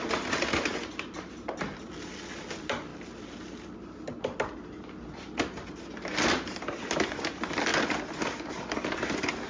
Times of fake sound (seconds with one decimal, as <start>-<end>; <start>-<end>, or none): none